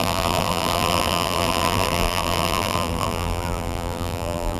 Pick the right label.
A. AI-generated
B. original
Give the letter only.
A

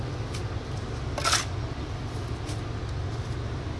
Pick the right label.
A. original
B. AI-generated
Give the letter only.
A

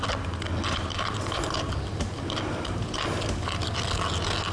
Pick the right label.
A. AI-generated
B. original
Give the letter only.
B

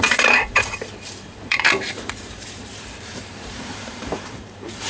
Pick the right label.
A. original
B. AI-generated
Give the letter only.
B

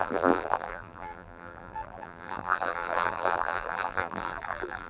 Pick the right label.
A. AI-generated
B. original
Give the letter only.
A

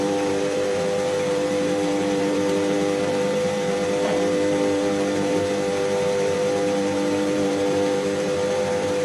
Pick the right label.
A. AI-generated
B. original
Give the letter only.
A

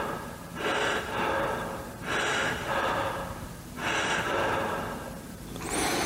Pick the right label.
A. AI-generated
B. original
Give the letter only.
B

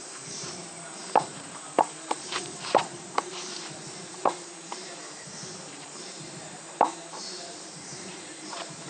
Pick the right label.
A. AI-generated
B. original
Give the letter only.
A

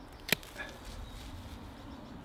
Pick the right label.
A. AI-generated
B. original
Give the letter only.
B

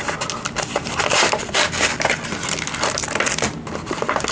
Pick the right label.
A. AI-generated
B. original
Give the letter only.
B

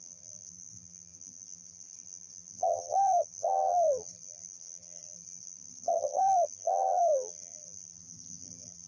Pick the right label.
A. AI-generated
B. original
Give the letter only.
A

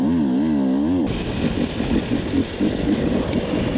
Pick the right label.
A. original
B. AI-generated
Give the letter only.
A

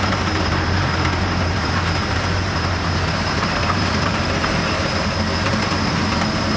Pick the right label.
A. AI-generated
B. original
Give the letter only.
A